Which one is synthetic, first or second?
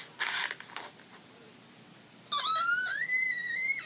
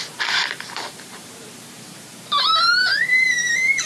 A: second